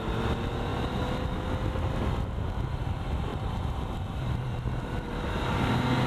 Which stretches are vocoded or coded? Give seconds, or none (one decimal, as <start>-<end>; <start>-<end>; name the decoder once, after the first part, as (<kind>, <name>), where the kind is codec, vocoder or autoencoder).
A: 3.3-4.6 (vocoder, BigVGAN v2)